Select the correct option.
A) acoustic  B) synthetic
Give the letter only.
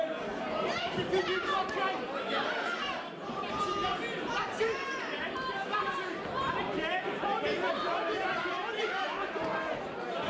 B